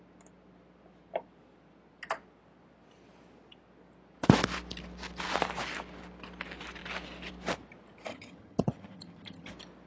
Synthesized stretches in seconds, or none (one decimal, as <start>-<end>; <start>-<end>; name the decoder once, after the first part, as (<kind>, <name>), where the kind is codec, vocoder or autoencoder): 8.1-9.5 (vocoder, HiFi-GAN)

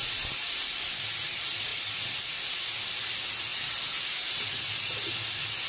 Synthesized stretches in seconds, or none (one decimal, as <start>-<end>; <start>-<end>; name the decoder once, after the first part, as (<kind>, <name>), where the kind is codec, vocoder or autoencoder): 0.0-0.9 (vocoder, BigVGAN v2); 3.5-5.1

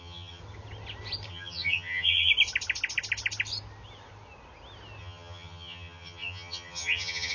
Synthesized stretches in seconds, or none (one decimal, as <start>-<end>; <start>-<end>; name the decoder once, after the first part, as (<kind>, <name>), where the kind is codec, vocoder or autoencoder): 0.0-0.4 (vocoder, HiFi-GAN); 1.3-2.3; 5.0-7.3

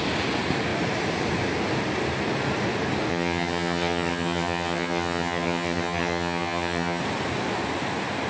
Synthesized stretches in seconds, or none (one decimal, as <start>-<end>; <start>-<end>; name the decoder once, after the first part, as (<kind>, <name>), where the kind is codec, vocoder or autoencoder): 3.1-7.0 (vocoder, HiFi-GAN)

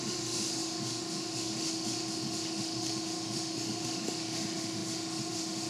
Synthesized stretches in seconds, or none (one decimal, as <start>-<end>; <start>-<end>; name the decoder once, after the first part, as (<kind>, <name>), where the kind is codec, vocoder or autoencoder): 0.0-5.7 (autoencoder, DAC-VAE)